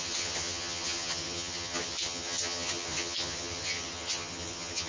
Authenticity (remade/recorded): remade